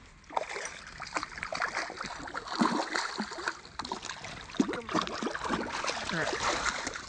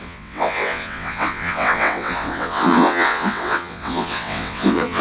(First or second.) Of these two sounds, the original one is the first